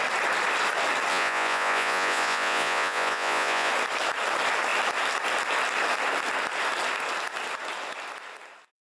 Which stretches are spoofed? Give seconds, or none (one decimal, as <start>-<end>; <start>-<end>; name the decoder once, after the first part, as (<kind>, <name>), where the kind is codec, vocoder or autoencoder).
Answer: 1.1-3.7 (vocoder, Vocos)